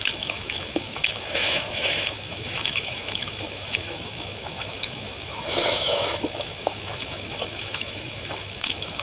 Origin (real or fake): fake